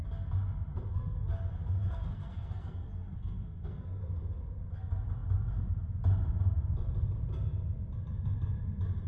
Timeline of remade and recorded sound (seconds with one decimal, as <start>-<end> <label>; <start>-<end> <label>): 0.0-0.7 recorded; 0.7-1.3 remade; 1.3-1.8 recorded; 1.8-4.1 remade; 4.1-9.1 recorded